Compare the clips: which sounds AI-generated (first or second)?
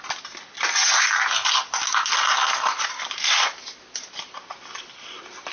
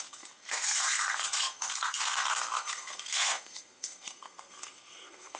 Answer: second